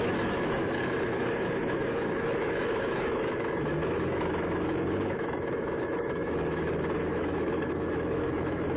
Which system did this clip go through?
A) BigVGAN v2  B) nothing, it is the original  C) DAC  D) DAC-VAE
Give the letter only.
D